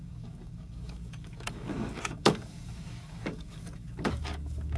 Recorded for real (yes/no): no